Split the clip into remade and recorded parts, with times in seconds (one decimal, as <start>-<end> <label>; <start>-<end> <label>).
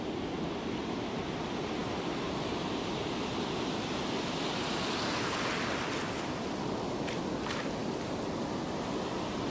0.0-9.5 recorded